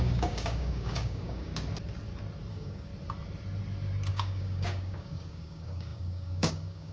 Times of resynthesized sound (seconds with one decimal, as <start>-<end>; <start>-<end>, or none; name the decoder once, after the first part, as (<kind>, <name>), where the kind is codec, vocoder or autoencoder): 0.0-1.5 (codec, DAC); 2.5-2.9; 4.1-6.9